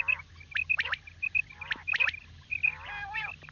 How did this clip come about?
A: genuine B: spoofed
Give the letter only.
A